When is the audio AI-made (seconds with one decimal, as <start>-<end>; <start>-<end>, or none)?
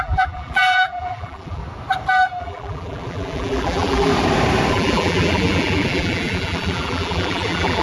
0.0-1.6; 2.4-4.1; 4.7-7.8